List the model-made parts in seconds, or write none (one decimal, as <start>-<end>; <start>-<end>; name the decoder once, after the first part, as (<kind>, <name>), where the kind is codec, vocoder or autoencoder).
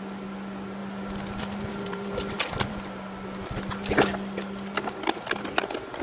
none